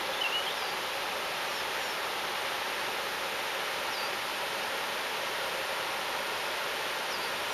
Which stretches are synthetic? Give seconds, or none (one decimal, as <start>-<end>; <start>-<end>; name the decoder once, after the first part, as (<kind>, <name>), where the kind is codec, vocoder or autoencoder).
0.0-1.5 (vocoder, BigVGAN v2); 4.7-7.5